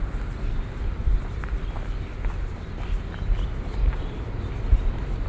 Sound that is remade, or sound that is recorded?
recorded